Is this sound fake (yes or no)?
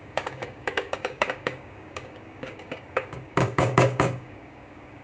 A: yes